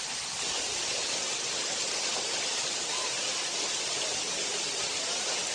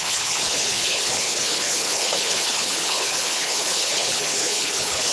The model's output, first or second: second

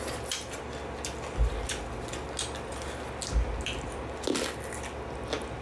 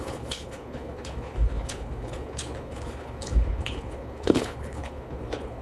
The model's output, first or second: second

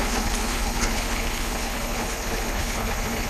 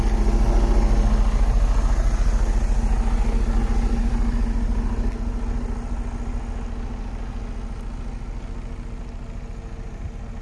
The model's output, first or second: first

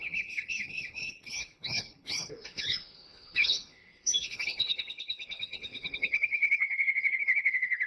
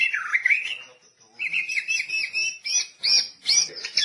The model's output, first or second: first